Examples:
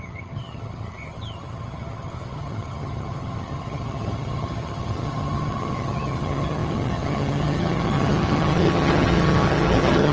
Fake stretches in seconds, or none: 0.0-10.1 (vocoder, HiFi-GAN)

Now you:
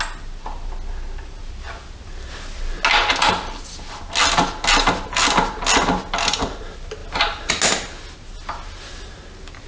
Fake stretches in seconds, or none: none

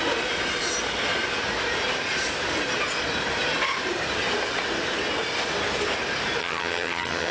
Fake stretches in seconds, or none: 6.4-7.3 (vocoder, HiFi-GAN)

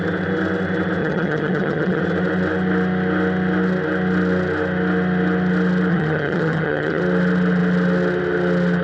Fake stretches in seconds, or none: 1.0-2.0 (vocoder, HiFi-GAN); 5.9-7.0